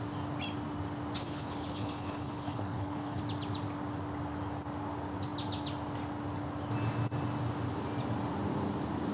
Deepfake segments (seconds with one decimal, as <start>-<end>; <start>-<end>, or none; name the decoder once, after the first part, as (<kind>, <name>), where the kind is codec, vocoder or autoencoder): 1.2-3.2 (codec, HILCodec)